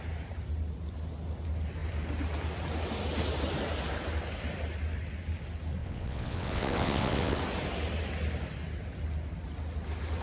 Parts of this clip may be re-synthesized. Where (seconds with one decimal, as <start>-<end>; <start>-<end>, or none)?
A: 5.8-7.4